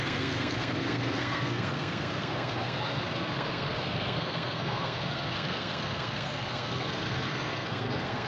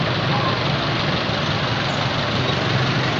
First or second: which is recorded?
second